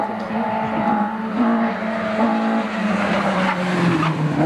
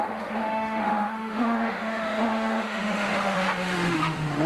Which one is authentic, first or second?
first